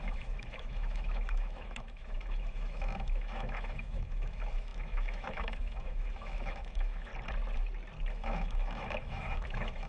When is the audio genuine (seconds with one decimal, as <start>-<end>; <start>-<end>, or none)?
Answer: 7.1-8.1